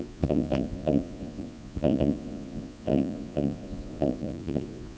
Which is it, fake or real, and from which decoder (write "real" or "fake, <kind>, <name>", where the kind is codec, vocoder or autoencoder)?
fake, vocoder, Vocos